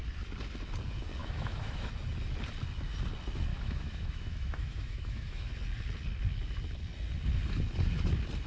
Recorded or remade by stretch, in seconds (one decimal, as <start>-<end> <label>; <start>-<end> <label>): 0.0-1.2 recorded; 1.2-1.9 remade; 1.9-3.5 recorded; 3.5-5.5 remade; 5.5-8.5 recorded